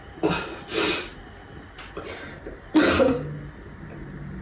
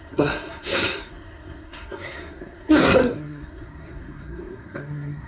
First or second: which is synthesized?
second